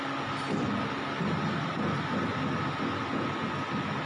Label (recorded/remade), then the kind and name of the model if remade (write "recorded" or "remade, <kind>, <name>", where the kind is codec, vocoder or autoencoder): recorded